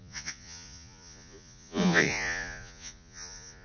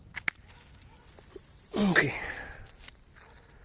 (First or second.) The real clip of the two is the second